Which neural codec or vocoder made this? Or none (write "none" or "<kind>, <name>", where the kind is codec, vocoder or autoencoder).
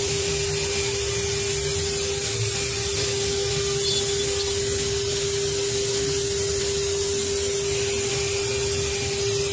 none